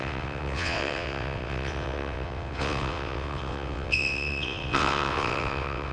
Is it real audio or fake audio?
fake